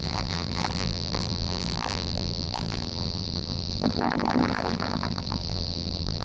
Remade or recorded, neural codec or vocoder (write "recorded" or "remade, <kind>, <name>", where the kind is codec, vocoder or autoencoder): remade, vocoder, BigVGAN v2